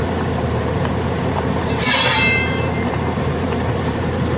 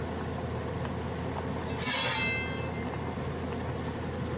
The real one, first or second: second